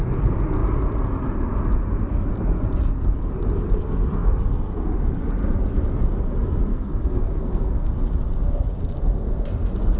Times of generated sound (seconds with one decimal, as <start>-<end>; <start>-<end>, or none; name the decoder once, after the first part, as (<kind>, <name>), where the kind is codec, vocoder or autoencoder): 6.7-7.9 (codec, SNAC)